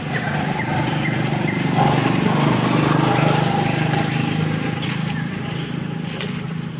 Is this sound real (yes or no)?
yes